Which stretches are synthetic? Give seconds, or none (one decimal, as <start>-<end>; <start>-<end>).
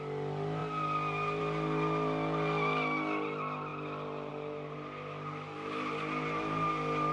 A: none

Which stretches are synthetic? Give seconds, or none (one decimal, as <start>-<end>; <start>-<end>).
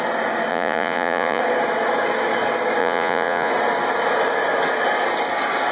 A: 0.5-1.4; 2.8-3.5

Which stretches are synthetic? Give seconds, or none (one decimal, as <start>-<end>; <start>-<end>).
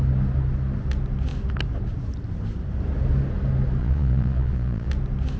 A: 3.8-4.9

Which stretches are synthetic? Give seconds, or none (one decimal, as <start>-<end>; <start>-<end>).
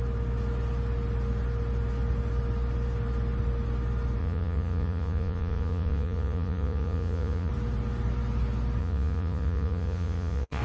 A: 4.2-7.5; 8.8-10.6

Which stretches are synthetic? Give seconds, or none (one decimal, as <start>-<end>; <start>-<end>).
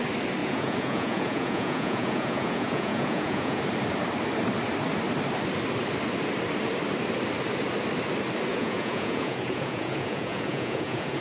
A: 0.4-3.6; 8.5-11.2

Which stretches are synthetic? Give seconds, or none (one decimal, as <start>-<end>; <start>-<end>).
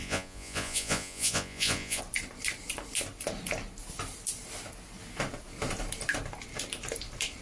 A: 0.0-2.0